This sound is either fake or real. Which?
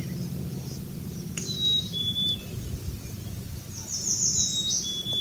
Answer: real